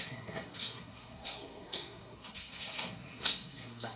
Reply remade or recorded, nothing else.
remade